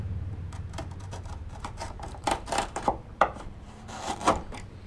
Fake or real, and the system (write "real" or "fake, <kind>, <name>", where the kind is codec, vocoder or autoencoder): fake, vocoder, BigVGAN v2